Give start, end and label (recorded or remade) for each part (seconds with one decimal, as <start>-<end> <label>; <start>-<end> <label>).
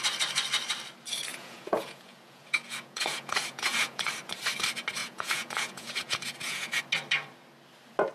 0.0-1.3 recorded; 1.3-4.1 remade; 4.1-5.0 recorded; 5.0-6.8 remade; 6.8-8.1 recorded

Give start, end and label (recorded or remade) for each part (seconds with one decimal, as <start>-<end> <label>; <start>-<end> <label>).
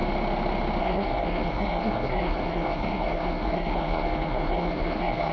0.0-0.8 recorded; 0.8-5.3 remade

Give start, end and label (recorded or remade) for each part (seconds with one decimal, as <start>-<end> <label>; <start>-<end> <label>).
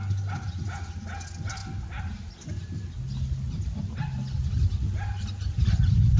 0.0-6.2 recorded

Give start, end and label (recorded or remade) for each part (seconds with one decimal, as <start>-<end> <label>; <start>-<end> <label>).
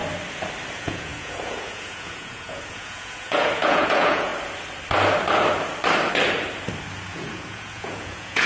0.0-0.7 recorded; 0.7-4.3 remade; 4.3-7.1 recorded; 7.1-8.5 remade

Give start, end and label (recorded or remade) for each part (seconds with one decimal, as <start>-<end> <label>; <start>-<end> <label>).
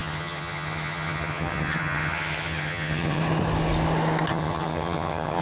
0.0-3.2 remade; 3.2-4.3 recorded; 4.3-5.4 remade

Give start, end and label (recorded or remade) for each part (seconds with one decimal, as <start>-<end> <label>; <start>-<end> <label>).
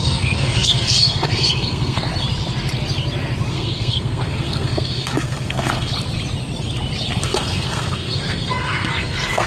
0.0-2.1 remade; 2.1-3.5 recorded; 3.5-5.9 remade; 5.9-7.2 recorded; 7.2-9.5 remade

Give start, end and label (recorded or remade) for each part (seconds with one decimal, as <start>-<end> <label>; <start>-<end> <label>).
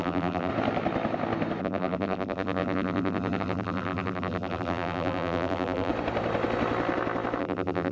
0.0-0.5 remade; 0.5-1.6 recorded; 1.6-5.9 remade; 5.9-7.4 recorded; 7.4-7.9 remade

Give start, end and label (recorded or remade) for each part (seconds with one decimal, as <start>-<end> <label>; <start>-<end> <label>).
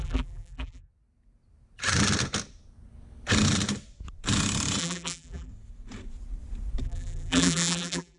0.0-0.9 remade; 0.9-4.8 recorded; 4.8-5.5 remade; 5.5-6.8 recorded; 6.8-8.2 remade